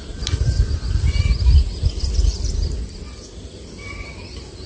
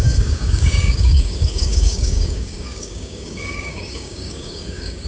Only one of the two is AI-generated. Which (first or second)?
second